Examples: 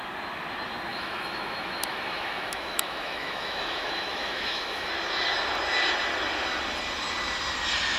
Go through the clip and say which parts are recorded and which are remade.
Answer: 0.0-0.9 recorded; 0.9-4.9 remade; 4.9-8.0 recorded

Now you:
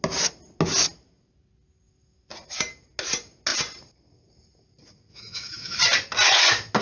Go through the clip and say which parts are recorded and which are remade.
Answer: 0.0-5.1 recorded; 5.1-5.8 remade; 5.8-6.8 recorded

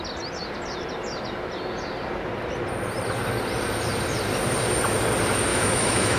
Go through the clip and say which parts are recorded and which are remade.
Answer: 0.0-5.5 recorded; 5.5-6.2 remade

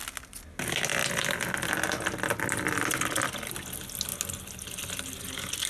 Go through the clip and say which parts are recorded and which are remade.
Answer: 0.0-5.7 recorded

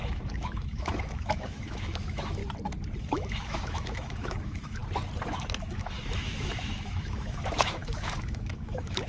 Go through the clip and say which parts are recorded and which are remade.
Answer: 0.0-2.4 remade; 2.4-3.0 recorded; 3.0-4.8 remade; 4.8-5.3 recorded; 5.3-9.1 remade

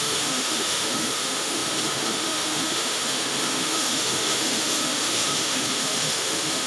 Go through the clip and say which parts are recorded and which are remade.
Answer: 0.0-6.7 remade

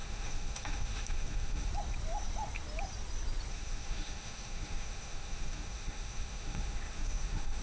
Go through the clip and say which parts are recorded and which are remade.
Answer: 0.0-1.7 remade; 1.7-3.5 recorded; 3.5-7.6 remade